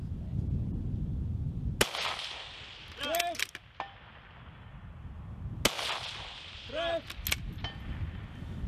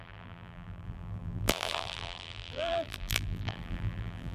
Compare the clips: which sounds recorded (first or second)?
first